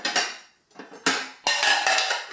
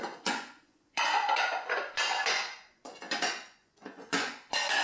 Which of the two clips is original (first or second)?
first